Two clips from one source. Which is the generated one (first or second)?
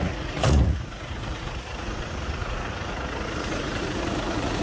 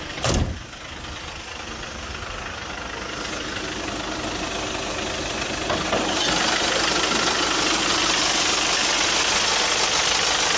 first